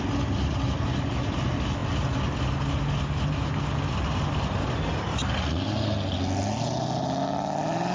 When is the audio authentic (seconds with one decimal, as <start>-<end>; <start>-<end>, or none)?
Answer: 0.0-7.9